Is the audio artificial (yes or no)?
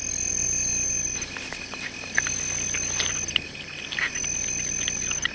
no